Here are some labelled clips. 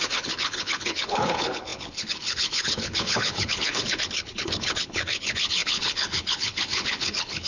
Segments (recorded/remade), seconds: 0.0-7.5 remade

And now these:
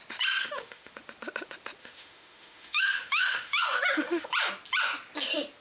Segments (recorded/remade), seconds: 0.0-0.4 recorded; 0.4-0.9 remade; 0.9-1.8 recorded; 1.8-4.3 remade; 4.3-5.6 recorded

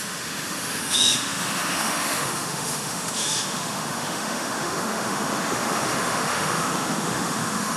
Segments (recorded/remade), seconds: 0.0-7.8 remade

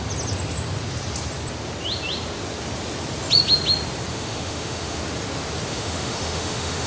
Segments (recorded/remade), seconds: 0.0-4.1 recorded; 4.1-5.0 remade; 5.0-5.7 recorded; 5.7-6.9 remade

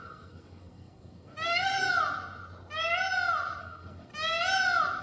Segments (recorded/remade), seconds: 0.0-1.7 remade; 1.7-3.6 recorded; 3.6-4.1 remade; 4.1-5.0 recorded